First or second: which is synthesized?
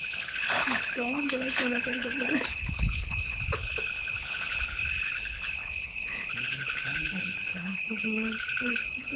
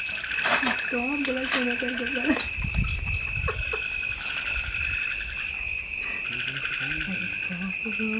first